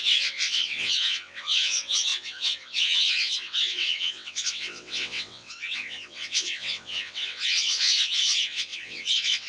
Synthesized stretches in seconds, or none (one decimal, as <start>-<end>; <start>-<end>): 0.0-9.5